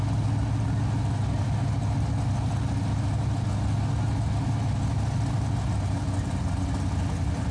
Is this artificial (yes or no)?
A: no